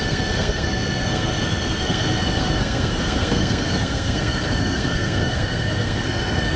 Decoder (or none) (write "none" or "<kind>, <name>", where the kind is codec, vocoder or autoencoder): codec, SNAC